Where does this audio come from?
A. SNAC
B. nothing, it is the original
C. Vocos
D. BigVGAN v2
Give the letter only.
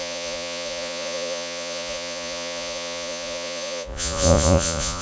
C